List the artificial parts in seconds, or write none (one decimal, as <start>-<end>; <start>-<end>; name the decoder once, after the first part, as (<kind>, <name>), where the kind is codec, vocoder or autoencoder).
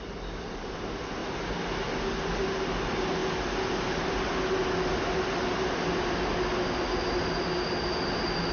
none